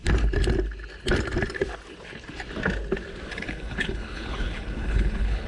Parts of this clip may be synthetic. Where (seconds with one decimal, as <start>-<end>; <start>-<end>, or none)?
3.3-5.5

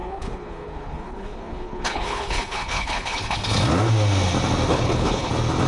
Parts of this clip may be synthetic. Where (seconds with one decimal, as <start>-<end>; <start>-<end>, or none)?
0.0-3.4; 4.7-5.3

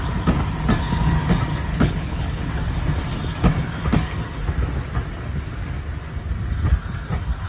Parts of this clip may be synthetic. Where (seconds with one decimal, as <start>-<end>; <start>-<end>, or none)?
1.7-2.5

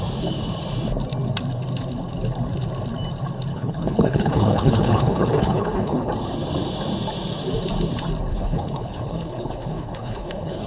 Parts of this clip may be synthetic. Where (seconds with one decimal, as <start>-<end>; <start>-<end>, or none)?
3.5-6.1; 8.3-10.7

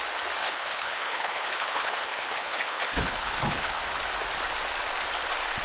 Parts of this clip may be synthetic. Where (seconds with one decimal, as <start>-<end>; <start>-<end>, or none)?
0.4-3.8

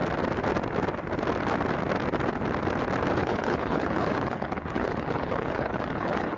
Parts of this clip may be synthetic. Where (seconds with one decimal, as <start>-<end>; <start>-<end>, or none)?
3.2-6.4

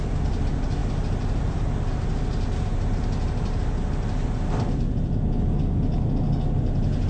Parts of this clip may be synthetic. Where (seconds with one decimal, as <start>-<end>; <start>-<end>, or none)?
none

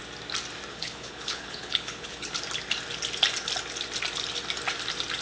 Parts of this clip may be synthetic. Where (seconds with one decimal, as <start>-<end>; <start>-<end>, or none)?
0.7-2.3